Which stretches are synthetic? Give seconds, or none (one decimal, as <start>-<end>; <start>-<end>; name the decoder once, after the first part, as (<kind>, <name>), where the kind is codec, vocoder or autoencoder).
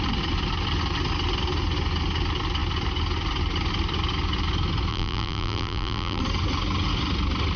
4.9-6.2 (vocoder, BigVGAN v2)